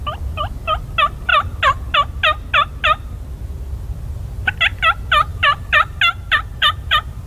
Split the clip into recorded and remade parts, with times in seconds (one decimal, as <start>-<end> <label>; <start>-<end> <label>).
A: 0.0-5.3 recorded; 5.3-6.0 remade; 6.0-6.5 recorded; 6.5-7.3 remade